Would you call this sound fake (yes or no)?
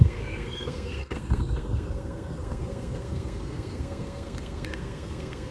yes